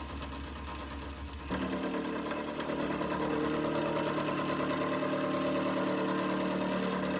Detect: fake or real real